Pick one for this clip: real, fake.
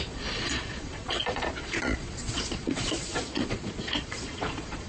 fake